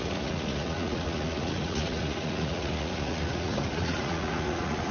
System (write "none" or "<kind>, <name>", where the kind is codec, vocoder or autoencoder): vocoder, Vocos